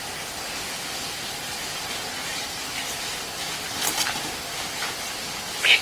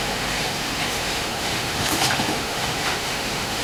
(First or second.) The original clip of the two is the first